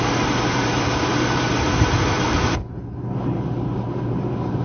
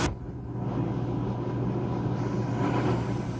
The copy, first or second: first